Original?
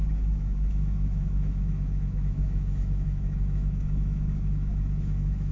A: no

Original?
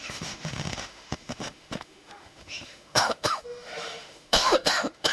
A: no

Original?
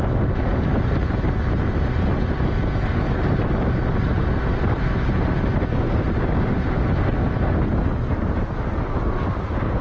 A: yes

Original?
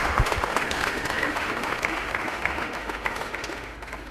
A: no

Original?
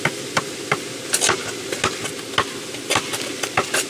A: yes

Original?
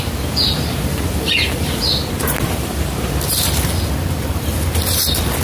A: yes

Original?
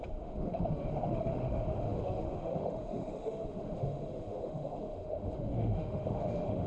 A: no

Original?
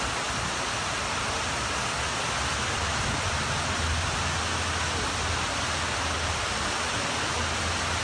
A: yes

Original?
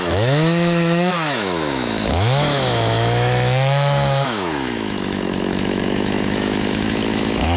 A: no